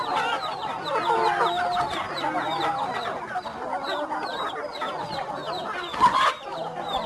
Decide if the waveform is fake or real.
real